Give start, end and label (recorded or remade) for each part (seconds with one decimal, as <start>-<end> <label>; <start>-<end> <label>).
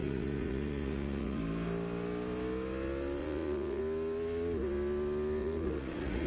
0.0-1.4 remade; 1.4-3.2 recorded; 3.2-3.8 remade; 3.8-5.4 recorded; 5.4-6.3 remade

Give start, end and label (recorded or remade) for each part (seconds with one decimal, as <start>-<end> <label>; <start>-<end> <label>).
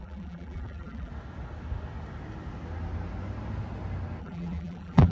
0.0-1.1 remade; 1.1-4.2 recorded; 4.2-5.1 remade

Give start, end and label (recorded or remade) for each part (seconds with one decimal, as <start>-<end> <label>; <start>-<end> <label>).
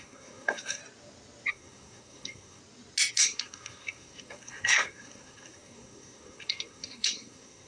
0.0-0.8 remade; 0.8-1.5 recorded; 1.5-2.6 remade; 2.6-3.1 recorded; 3.1-7.7 remade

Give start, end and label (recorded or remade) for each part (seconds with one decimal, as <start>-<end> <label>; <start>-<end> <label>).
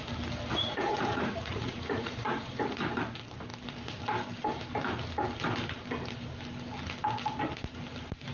0.0-0.5 recorded; 0.5-2.8 remade; 2.8-8.3 recorded